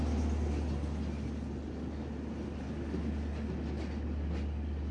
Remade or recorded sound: recorded